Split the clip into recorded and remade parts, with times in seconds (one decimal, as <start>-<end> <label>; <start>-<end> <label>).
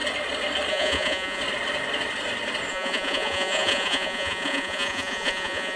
0.0-0.7 recorded; 0.7-1.4 remade; 1.4-2.7 recorded; 2.7-5.8 remade